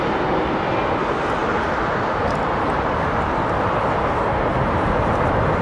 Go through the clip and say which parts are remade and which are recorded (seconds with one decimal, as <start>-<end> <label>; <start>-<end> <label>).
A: 0.0-5.6 recorded